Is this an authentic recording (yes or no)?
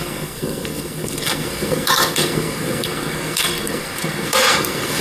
no